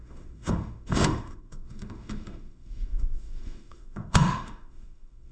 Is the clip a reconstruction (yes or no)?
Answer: yes